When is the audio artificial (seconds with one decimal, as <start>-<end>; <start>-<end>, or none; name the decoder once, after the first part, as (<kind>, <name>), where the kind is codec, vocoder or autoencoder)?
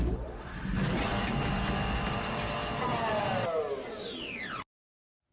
none